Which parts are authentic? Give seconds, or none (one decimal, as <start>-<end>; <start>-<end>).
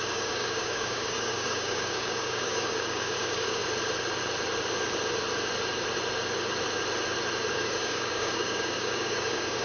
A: 3.6-7.5